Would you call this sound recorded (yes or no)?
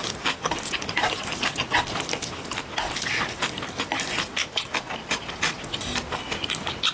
yes